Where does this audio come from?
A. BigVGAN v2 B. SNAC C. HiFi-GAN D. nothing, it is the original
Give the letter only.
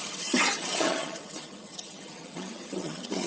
C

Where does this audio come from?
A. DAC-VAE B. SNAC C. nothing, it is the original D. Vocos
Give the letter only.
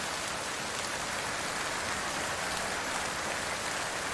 C